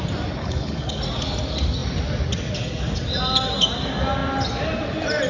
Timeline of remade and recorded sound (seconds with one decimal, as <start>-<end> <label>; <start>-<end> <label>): 0.0-0.4 recorded; 0.4-1.0 remade; 1.0-5.3 recorded